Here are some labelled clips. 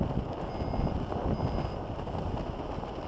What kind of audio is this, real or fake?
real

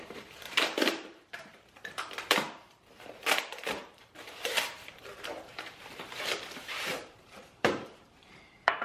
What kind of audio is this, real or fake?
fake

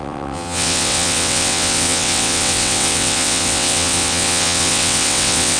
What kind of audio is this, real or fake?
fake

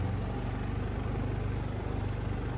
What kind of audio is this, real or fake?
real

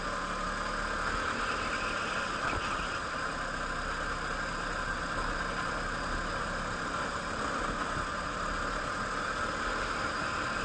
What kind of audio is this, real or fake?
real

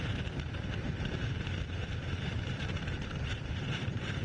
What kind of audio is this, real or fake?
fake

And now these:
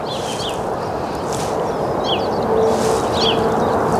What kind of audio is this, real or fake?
real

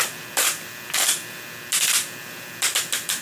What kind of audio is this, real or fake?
real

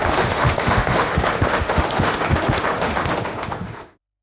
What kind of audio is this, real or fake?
fake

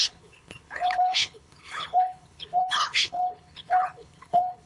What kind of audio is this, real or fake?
fake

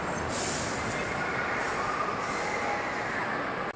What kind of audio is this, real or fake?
real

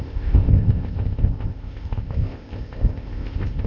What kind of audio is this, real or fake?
fake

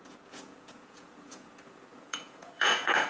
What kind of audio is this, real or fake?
fake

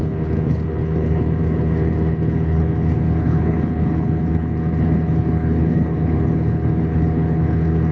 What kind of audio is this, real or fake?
fake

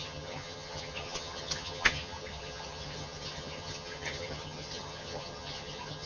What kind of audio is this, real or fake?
fake